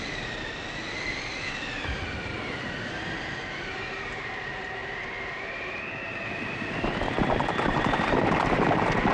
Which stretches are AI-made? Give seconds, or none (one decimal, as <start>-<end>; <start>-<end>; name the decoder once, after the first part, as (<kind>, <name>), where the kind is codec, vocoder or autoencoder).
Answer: none